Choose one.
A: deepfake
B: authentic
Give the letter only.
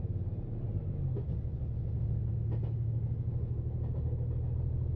B